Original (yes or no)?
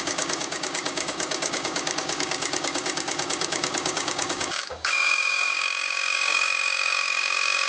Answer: no